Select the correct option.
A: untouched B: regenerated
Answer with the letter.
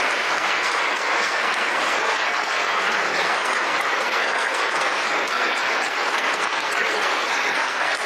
B